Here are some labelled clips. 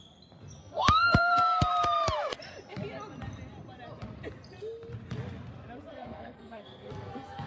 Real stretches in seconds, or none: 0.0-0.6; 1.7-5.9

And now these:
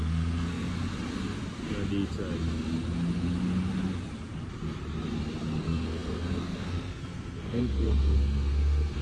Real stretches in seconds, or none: 0.7-5.6

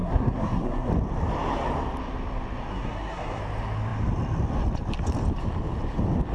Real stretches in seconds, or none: 0.9-2.7; 3.4-6.3